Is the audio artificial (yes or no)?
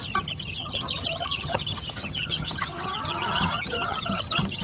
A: yes